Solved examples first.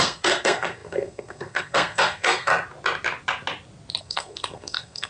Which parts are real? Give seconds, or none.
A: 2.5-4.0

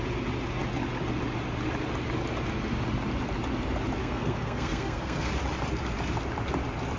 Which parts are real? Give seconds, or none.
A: 0.0-4.0; 5.3-7.0